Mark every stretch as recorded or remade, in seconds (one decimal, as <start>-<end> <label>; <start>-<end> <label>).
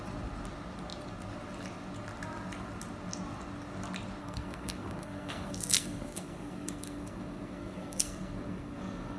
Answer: 0.0-4.2 recorded; 4.2-9.2 remade